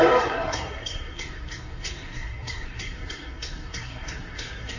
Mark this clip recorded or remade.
remade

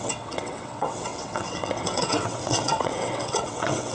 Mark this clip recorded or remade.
remade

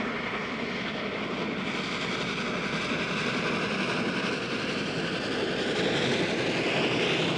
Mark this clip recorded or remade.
recorded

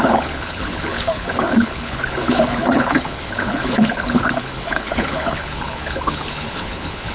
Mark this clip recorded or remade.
remade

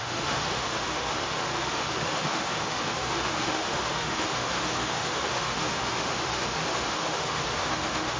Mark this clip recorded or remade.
remade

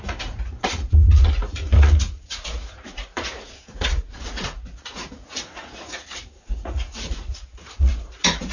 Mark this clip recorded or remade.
remade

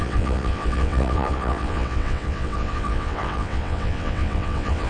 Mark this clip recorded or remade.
remade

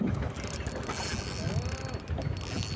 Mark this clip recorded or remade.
recorded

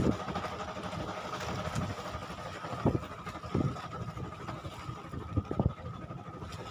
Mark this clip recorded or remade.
recorded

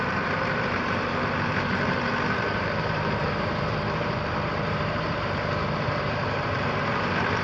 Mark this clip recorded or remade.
remade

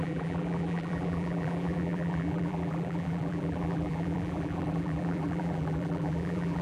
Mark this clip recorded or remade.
remade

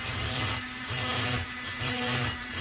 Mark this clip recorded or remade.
remade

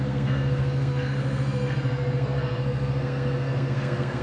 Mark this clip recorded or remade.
remade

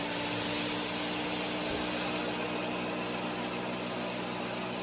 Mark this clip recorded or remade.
recorded